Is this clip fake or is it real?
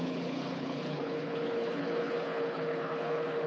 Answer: fake